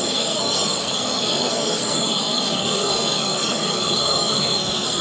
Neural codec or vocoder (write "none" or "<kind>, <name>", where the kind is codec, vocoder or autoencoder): codec, SNAC